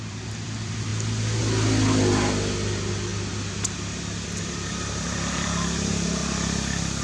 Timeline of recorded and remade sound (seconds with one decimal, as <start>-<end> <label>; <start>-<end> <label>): 0.0-3.1 remade; 3.1-4.4 recorded; 4.4-6.2 remade; 6.2-7.0 recorded